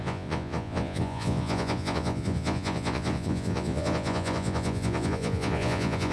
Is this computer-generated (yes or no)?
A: yes